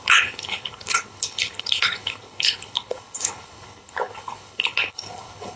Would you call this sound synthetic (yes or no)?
yes